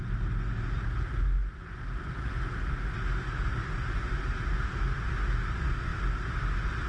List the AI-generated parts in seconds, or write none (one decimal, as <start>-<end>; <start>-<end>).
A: none